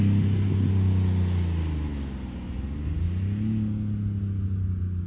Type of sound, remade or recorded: recorded